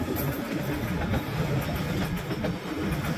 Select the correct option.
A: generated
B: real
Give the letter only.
B